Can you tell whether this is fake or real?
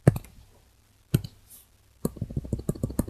real